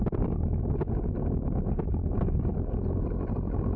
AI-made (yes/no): no